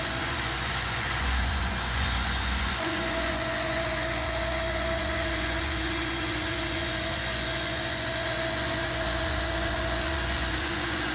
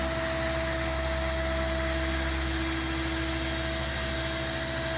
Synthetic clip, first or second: first